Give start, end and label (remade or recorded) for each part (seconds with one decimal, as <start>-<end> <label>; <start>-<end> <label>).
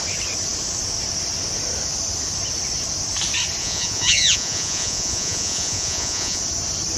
0.0-3.6 recorded; 3.6-6.4 remade; 6.4-7.0 recorded